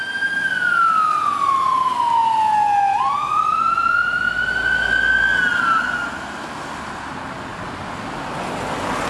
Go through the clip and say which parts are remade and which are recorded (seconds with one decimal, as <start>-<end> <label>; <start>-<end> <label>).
0.0-7.5 recorded; 7.5-8.0 remade; 8.0-9.1 recorded